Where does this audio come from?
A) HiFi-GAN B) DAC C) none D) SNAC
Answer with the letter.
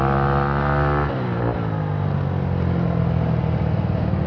C